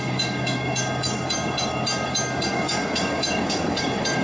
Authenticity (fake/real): fake